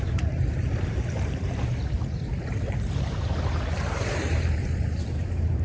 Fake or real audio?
fake